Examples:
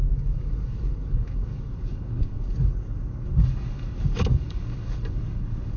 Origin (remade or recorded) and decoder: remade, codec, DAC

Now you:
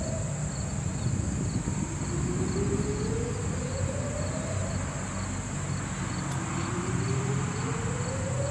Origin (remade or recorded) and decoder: recorded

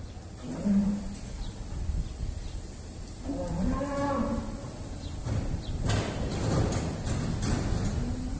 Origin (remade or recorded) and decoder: recorded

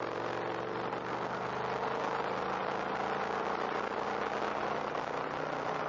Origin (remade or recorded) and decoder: recorded